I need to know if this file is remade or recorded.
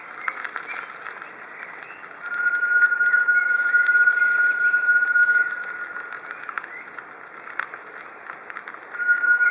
recorded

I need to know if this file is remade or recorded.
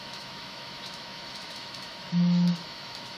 remade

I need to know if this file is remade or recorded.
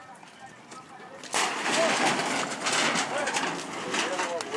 recorded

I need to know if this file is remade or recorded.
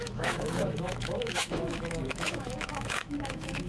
remade